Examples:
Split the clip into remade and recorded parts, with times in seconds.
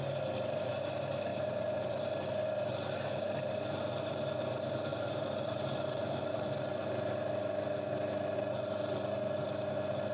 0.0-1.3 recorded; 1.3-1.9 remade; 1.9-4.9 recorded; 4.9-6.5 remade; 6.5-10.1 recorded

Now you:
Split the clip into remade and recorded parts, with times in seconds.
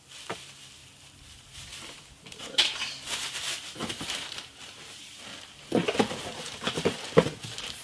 0.0-0.8 recorded; 0.8-5.2 remade; 5.2-6.3 recorded; 6.3-7.1 remade; 7.1-7.8 recorded